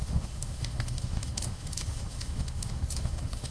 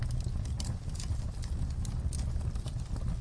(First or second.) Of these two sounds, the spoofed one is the first